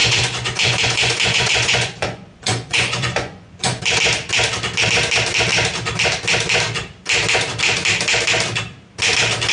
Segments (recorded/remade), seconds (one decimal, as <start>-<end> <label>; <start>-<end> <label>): 0.0-3.8 remade; 3.8-9.5 recorded